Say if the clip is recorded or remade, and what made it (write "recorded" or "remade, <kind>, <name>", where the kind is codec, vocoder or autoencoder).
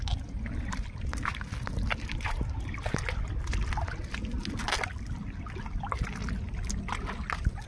recorded